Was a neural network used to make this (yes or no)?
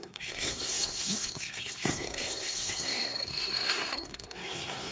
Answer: yes